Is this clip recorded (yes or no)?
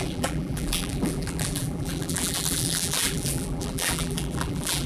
no